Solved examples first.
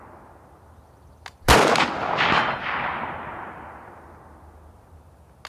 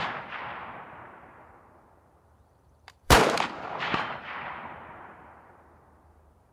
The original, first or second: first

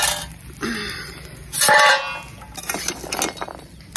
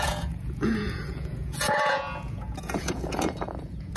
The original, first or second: first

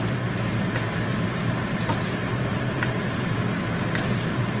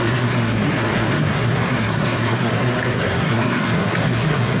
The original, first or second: first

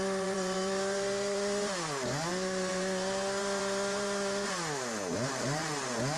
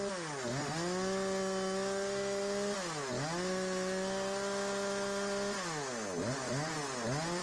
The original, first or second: second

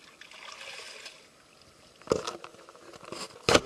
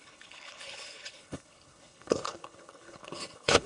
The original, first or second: first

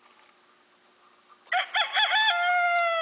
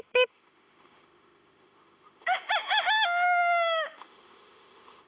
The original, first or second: first